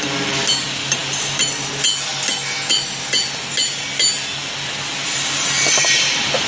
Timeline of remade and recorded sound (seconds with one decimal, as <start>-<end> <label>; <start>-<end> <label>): 0.0-6.5 recorded